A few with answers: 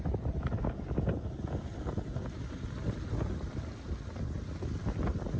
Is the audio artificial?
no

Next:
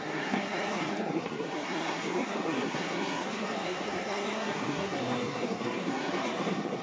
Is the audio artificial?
yes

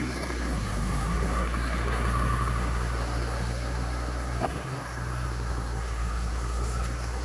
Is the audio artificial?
yes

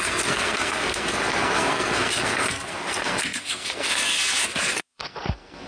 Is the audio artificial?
yes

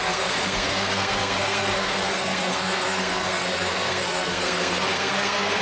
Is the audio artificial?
yes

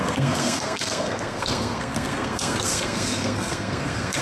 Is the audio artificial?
yes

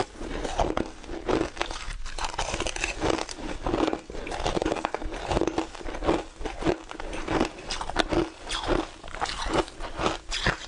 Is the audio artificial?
no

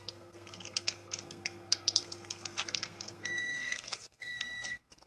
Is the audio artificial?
yes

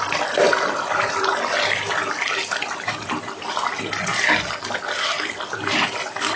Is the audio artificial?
no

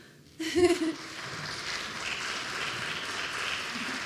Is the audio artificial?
no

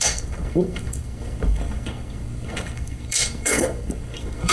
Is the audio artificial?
yes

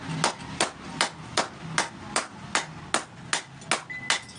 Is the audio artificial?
no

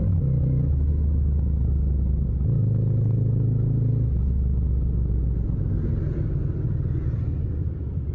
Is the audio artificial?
no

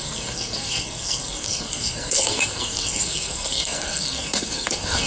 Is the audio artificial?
yes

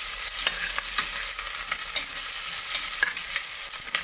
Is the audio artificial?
no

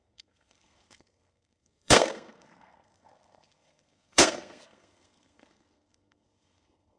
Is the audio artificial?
yes